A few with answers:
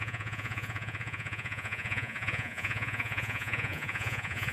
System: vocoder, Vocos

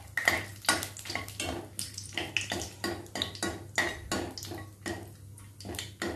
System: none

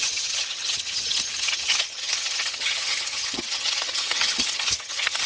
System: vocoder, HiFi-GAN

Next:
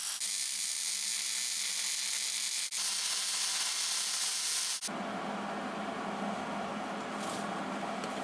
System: none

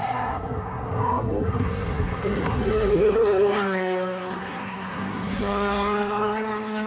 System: codec, SNAC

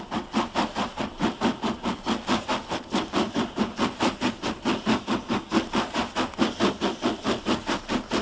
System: vocoder, BigVGAN v2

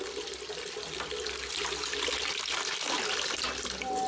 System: none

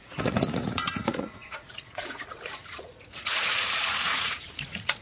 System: vocoder, Vocos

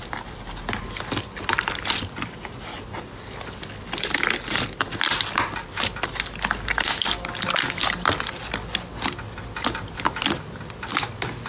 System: none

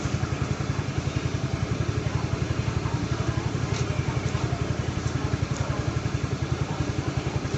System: vocoder, BigVGAN v2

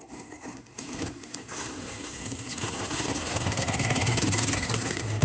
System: codec, SNAC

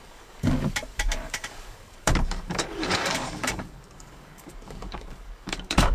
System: codec, DAC